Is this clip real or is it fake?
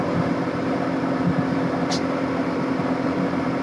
fake